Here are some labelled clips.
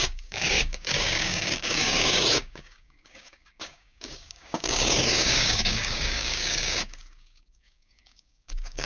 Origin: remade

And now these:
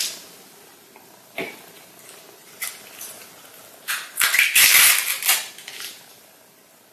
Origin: recorded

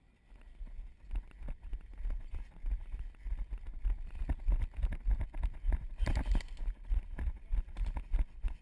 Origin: recorded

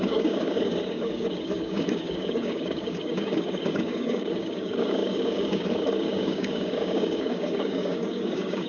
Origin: remade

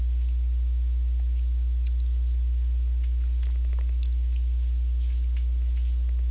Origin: recorded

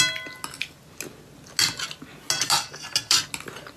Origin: recorded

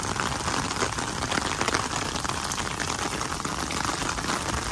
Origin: recorded